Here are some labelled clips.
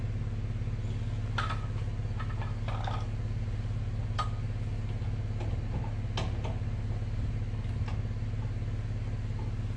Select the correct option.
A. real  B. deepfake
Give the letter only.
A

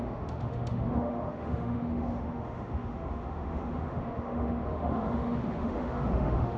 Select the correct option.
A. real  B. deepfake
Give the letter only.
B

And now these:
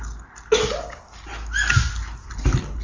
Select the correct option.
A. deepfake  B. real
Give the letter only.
B